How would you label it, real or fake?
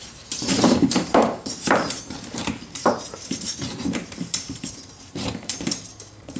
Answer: fake